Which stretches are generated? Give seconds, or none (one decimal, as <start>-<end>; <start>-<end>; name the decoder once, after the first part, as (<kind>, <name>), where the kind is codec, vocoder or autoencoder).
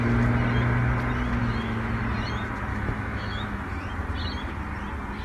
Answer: 1.4-2.0 (autoencoder, DAC-VAE); 2.7-3.9